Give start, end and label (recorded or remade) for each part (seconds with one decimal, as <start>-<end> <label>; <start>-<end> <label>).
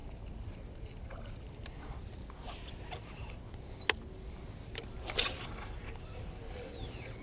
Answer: 0.0-7.2 recorded